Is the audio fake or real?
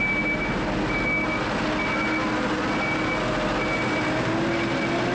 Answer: real